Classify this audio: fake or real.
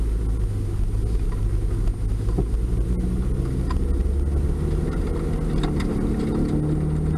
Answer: real